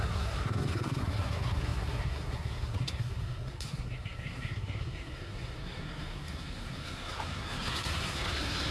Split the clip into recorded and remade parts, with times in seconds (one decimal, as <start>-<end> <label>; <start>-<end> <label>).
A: 0.0-8.7 remade